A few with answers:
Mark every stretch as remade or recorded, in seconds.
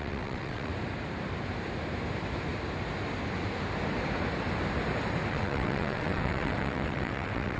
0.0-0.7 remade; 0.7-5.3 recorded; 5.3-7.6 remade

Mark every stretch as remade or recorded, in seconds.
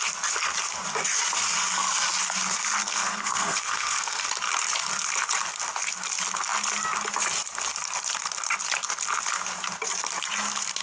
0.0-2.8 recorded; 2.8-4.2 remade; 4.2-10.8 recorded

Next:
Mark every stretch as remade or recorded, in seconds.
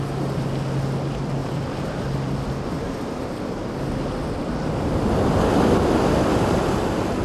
0.0-7.2 recorded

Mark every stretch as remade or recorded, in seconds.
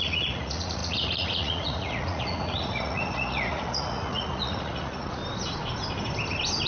0.0-5.2 remade; 5.2-6.7 recorded